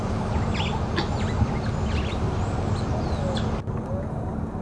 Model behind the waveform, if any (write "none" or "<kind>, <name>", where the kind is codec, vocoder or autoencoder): none